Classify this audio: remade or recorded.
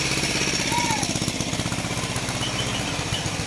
recorded